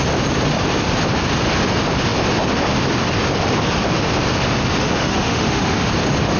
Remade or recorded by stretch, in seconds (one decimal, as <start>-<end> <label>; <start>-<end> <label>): 0.0-4.8 recorded; 4.8-5.9 remade; 5.9-6.4 recorded